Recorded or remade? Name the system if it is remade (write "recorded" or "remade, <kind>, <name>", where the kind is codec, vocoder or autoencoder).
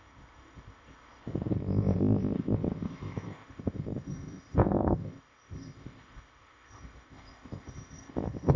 remade, codec, ZipCodec